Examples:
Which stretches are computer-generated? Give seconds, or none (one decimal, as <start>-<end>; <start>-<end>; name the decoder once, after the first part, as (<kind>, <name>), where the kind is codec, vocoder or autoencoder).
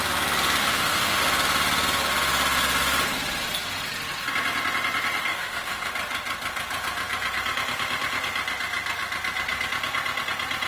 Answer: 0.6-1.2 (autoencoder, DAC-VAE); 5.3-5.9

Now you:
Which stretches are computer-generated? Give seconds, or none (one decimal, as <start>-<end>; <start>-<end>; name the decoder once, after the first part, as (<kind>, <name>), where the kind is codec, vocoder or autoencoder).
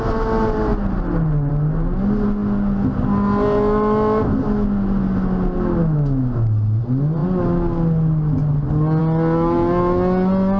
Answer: 5.8-6.8 (autoencoder, DAC-VAE)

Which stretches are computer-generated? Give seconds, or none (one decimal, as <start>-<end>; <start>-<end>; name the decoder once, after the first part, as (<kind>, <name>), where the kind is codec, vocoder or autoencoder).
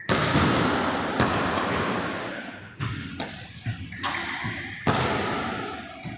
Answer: 2.2-3.1 (autoencoder, DAC-VAE)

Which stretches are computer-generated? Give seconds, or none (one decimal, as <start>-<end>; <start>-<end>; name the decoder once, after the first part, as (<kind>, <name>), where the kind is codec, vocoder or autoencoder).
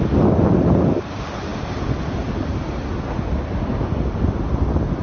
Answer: none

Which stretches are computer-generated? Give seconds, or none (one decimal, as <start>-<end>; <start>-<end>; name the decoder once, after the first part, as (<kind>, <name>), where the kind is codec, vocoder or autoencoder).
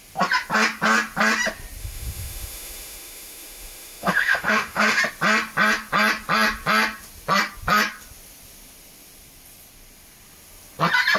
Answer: 1.8-5.0 (autoencoder, DAC-VAE)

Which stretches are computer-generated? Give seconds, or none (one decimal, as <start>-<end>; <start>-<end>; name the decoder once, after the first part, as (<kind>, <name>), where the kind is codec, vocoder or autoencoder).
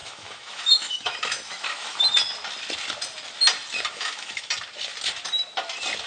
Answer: 0.0-2.0 (autoencoder, DAC-VAE); 3.9-4.5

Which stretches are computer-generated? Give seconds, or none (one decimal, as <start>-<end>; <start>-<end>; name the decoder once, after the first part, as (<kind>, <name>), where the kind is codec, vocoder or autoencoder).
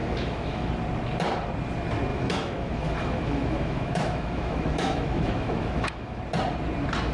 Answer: 0.0-0.7 (autoencoder, DAC-VAE); 2.1-6.2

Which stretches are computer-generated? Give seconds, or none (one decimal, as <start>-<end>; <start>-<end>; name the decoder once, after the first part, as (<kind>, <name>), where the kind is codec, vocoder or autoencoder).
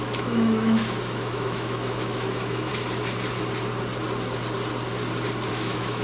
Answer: 0.0-2.7 (autoencoder, DAC-VAE); 5.5-6.0